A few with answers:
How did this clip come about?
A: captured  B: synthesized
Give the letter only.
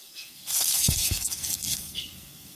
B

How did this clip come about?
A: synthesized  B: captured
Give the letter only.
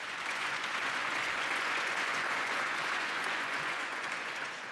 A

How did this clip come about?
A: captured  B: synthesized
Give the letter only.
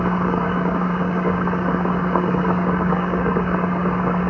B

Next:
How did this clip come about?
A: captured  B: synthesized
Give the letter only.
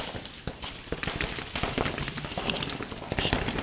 A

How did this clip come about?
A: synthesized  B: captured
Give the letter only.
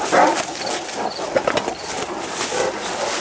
B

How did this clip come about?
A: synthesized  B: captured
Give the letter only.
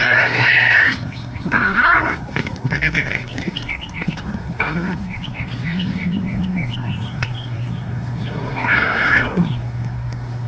A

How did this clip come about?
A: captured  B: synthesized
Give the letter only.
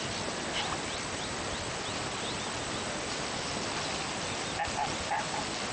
A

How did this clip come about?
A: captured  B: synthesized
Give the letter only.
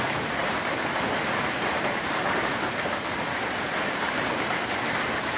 B